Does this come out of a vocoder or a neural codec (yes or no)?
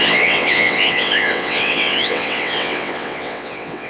yes